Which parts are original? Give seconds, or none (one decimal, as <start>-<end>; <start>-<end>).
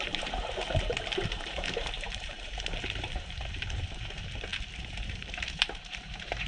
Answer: none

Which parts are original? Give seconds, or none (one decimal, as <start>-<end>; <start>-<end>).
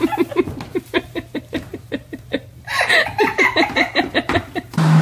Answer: 0.0-0.7; 2.9-4.1